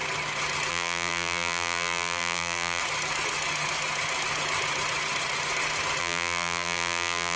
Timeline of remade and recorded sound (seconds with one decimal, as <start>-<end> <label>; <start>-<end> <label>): 0.0-0.7 recorded; 0.7-2.8 remade; 2.8-6.0 recorded; 6.0-7.4 remade